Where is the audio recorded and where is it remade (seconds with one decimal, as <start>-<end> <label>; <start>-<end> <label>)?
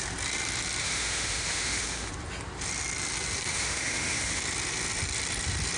0.0-0.8 recorded; 0.8-2.1 remade; 2.1-3.5 recorded; 3.5-4.4 remade; 4.4-5.8 recorded